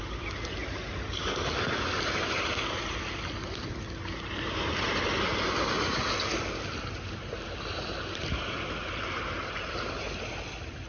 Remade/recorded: recorded